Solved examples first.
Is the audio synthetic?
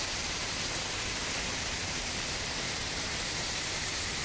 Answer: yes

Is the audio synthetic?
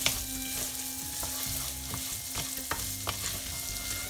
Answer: no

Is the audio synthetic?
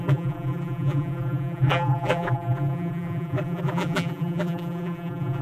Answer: yes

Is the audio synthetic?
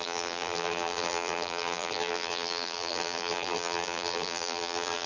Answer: yes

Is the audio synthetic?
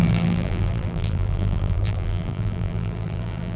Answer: yes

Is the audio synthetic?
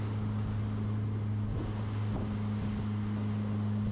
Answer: no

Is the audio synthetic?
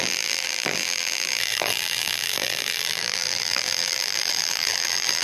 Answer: yes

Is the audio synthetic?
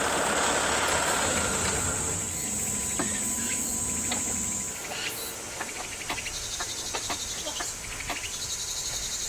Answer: no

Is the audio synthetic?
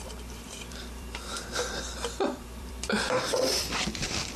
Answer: yes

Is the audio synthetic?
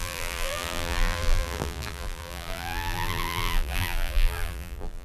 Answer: yes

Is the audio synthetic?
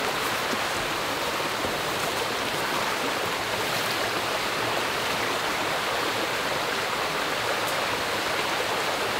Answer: no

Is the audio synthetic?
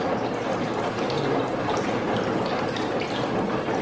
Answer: no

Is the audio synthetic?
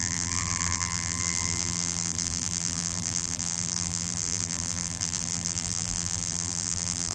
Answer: yes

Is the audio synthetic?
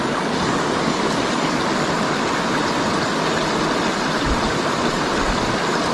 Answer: no